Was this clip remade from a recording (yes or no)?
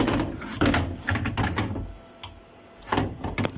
no